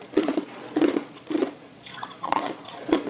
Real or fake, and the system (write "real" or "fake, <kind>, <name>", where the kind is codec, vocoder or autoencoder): fake, vocoder, Vocos